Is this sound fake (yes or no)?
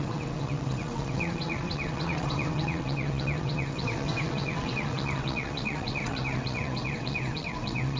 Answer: yes